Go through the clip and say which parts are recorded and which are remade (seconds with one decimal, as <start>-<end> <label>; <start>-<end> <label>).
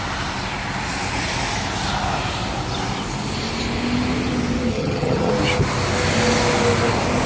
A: 0.0-4.7 recorded; 4.7-5.3 remade; 5.3-7.3 recorded